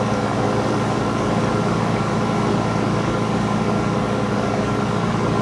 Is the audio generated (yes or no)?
yes